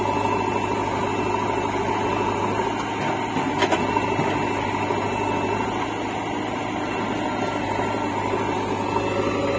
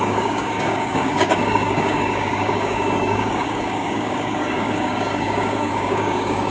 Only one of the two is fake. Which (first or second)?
second